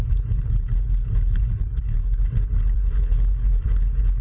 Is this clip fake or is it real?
fake